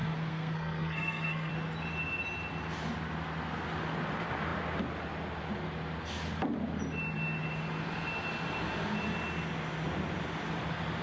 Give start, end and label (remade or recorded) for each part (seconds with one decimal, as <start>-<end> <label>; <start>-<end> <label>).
0.0-1.5 remade; 1.5-11.0 recorded